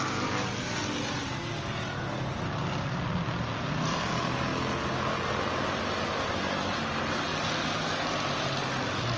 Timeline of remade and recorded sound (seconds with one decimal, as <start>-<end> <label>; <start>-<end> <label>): 0.0-9.2 recorded